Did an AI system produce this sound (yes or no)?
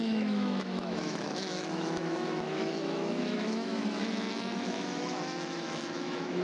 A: yes